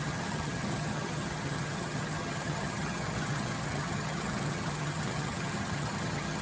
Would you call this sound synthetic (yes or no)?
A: yes